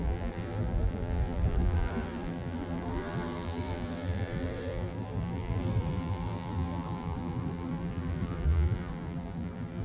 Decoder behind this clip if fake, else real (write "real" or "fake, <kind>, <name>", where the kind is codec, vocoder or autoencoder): fake, vocoder, BigVGAN v2